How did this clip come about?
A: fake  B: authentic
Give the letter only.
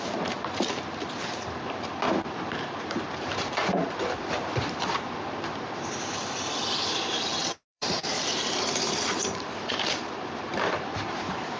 A